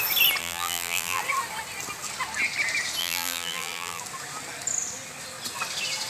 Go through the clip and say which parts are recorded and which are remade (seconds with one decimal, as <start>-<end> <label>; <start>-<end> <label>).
0.0-0.4 recorded; 0.4-1.2 remade; 1.2-3.0 recorded; 3.0-4.0 remade; 4.0-6.1 recorded